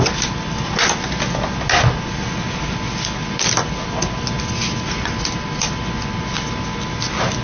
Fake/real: real